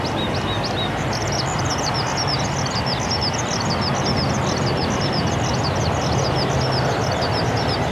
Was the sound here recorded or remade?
recorded